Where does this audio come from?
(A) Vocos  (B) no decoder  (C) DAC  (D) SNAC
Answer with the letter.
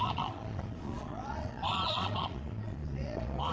A